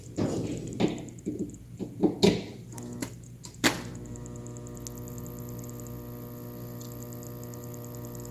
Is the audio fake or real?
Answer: real